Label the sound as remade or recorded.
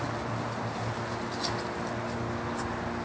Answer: recorded